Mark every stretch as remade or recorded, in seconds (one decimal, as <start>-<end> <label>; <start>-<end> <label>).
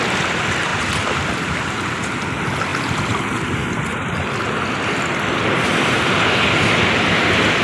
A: 0.0-7.6 recorded